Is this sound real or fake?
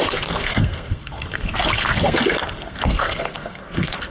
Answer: fake